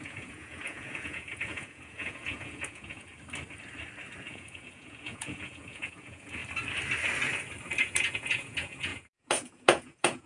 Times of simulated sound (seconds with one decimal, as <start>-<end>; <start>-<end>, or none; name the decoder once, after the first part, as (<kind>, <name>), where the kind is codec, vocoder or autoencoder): 0.0-3.1 (vocoder, Vocos); 4.3-6.4; 7.8-10.3